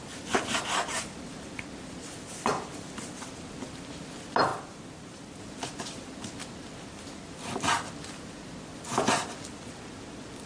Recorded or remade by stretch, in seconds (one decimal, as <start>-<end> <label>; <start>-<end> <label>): 0.0-10.5 recorded